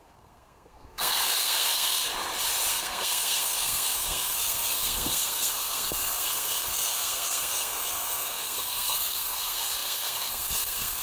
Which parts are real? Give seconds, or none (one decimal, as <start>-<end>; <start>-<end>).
2.1-2.7